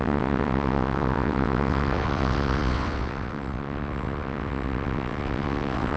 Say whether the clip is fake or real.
fake